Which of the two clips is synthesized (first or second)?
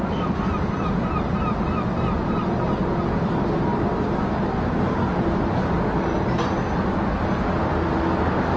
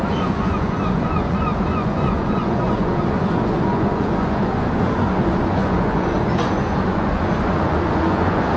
second